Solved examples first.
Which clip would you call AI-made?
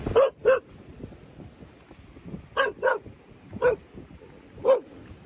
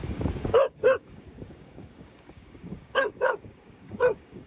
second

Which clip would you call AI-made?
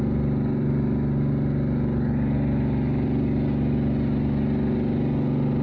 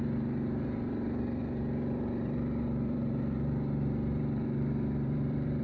second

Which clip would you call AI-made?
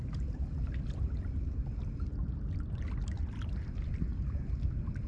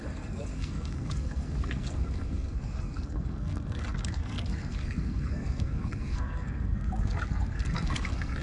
second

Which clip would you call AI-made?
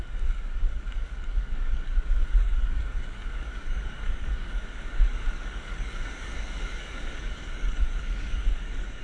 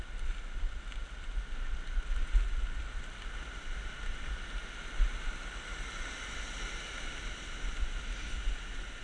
first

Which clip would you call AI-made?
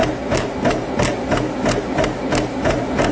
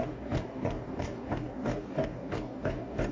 second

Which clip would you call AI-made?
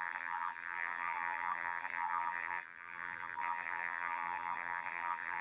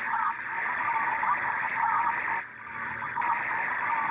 first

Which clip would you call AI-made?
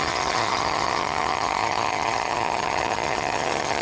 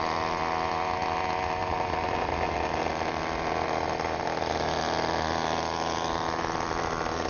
first